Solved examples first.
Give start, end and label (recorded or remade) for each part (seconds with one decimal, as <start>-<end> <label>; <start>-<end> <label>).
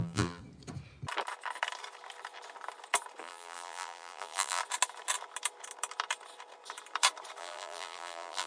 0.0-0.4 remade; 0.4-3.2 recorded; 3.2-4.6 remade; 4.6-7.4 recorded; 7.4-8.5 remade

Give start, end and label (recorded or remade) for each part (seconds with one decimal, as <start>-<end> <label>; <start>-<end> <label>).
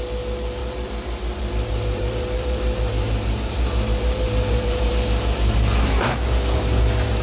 0.0-0.6 recorded; 0.6-4.9 remade; 4.9-7.2 recorded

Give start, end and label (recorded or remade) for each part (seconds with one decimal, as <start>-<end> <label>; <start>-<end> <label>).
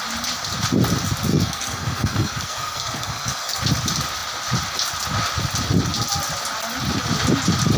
0.0-1.3 recorded; 1.3-3.6 remade; 3.6-7.8 recorded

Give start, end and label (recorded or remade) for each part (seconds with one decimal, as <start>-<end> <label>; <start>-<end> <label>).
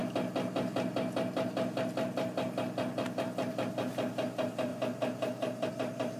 0.0-4.7 recorded; 4.7-5.7 remade; 5.7-6.2 recorded